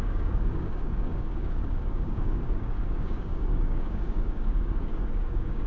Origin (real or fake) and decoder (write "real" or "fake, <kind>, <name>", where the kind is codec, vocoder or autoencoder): fake, codec, DAC